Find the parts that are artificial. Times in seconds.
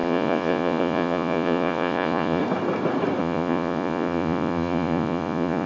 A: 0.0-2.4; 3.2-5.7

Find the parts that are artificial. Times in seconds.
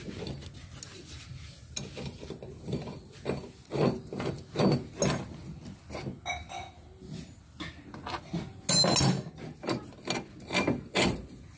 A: none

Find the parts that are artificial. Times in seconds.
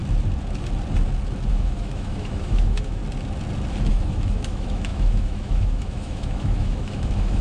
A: 1.5-3.0; 3.9-7.4